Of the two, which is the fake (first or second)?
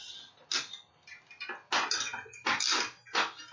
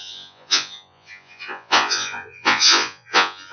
second